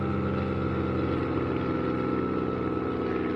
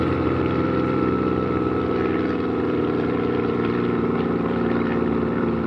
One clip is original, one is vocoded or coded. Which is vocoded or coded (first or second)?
second